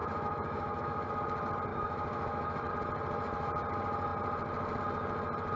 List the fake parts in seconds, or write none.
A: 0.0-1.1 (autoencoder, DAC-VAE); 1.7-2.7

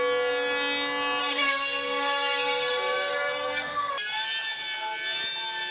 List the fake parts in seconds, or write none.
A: 1.2-3.9 (codec, SNAC)

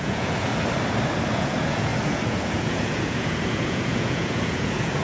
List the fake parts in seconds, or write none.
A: 0.0-0.5 (vocoder, Vocos); 1.3-5.0

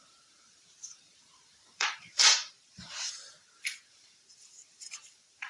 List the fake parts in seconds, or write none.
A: 0.0-5.5 (vocoder, BigVGAN v2)

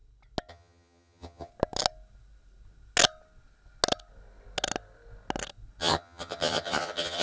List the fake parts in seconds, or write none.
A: 0.5-1.5 (vocoder, HiFi-GAN); 5.8-7.2

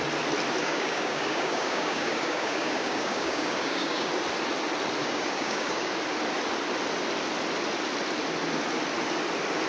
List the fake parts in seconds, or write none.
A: 0.6-4.1 (codec, DAC); 5.0-5.9

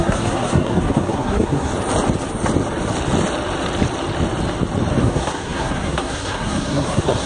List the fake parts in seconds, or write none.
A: 0.0-1.7 (codec, SNAC); 5.0-7.3

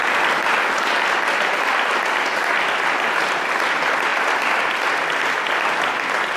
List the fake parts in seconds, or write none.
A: none